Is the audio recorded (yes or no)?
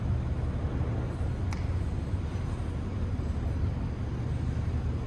yes